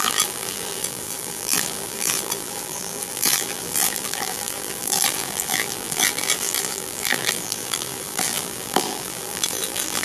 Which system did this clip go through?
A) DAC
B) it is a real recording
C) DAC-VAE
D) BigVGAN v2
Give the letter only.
D